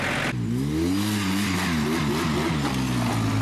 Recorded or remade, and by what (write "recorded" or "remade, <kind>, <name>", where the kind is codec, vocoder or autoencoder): recorded